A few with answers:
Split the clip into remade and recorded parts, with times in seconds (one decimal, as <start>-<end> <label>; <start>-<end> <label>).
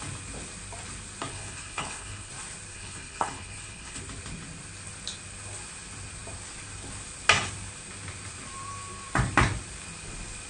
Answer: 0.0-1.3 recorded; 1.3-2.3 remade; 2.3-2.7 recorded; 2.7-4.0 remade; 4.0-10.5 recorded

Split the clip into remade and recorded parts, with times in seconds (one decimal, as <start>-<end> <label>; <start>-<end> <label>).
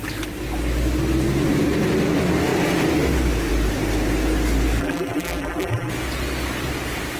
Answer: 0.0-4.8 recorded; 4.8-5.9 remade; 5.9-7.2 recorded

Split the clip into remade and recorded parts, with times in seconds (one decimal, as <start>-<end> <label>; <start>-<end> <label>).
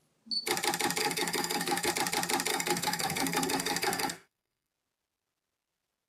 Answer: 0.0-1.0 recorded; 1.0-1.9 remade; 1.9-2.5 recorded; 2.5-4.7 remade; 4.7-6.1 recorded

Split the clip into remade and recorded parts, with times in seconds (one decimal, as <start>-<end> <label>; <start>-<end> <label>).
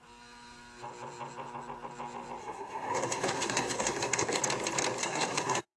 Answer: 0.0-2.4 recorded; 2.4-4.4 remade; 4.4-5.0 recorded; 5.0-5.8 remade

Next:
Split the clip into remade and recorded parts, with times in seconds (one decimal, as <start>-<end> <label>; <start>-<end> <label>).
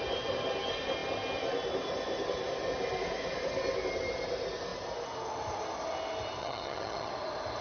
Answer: 0.0-6.4 recorded; 6.4-7.1 remade; 7.1-7.6 recorded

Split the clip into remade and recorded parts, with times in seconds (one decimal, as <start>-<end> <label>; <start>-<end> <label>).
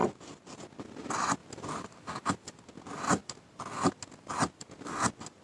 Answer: 0.0-5.4 recorded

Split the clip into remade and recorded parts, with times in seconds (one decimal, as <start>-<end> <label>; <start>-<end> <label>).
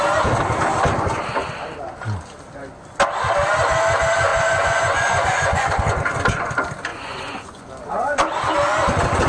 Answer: 0.0-4.3 recorded; 4.3-5.8 remade; 5.8-6.9 recorded; 6.9-7.7 remade; 7.7-9.3 recorded